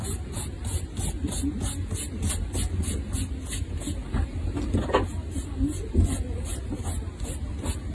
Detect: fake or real real